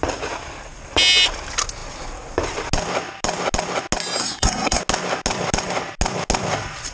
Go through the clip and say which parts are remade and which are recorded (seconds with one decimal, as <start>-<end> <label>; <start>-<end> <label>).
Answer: 0.0-4.2 recorded; 4.2-4.8 remade; 4.8-6.9 recorded